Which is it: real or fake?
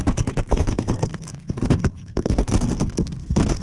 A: fake